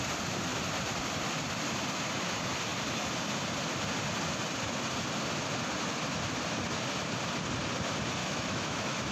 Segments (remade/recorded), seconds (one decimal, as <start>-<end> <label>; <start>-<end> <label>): 0.0-8.2 recorded; 8.2-9.1 remade